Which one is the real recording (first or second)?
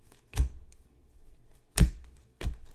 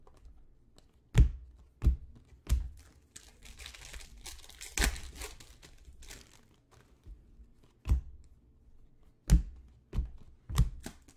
second